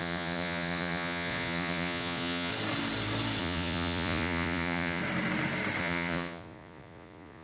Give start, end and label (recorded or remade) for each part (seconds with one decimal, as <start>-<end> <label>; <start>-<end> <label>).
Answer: 0.0-2.5 remade; 2.5-3.4 recorded; 3.4-5.0 remade; 5.0-5.8 recorded; 5.8-7.4 remade